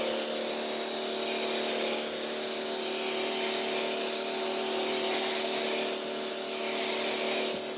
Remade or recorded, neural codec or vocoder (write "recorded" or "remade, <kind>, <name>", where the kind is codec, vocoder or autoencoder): recorded